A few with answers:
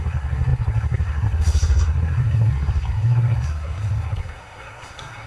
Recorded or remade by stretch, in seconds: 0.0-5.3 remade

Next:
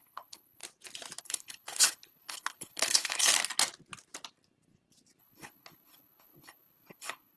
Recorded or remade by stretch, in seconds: 0.0-0.6 remade; 0.6-1.2 recorded; 1.2-3.3 remade; 3.3-5.2 recorded; 5.2-7.4 remade